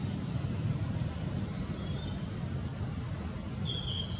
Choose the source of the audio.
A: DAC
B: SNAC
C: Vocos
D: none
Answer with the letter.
D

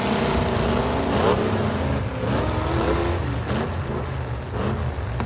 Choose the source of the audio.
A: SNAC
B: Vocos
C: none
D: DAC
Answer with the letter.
C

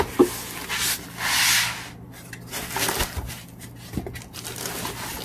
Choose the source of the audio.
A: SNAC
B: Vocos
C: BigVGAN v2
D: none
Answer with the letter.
D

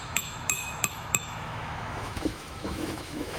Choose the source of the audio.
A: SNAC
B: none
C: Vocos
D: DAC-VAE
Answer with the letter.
D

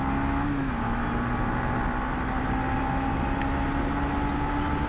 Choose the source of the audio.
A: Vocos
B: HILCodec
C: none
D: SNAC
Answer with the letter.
C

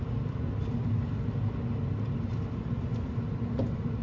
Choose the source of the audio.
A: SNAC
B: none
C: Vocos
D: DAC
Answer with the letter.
B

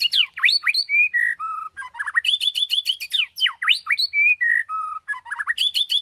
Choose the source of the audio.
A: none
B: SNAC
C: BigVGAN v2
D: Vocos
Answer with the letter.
C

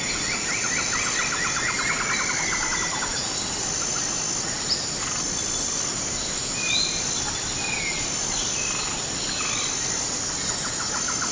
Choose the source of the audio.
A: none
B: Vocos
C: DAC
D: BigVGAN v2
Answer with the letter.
A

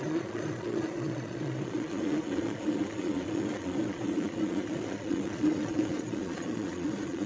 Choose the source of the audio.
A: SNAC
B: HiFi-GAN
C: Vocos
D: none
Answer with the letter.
C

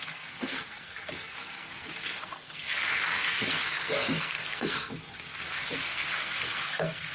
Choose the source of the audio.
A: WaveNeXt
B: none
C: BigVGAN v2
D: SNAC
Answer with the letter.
D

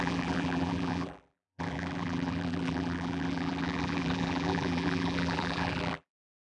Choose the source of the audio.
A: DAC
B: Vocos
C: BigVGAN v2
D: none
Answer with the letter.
C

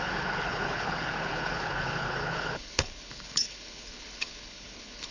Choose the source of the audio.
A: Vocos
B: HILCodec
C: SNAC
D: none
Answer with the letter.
B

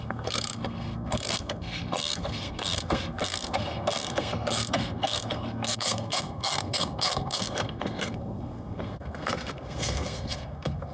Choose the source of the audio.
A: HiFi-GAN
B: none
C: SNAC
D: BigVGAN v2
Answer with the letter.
C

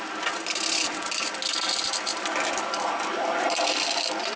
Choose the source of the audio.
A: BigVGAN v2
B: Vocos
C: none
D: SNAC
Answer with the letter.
C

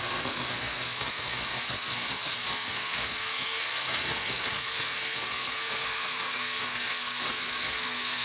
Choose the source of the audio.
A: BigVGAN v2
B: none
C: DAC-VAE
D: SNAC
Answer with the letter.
D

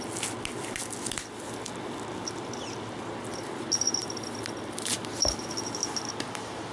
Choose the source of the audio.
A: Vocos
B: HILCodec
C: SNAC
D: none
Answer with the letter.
D